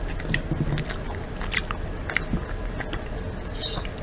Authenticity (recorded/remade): recorded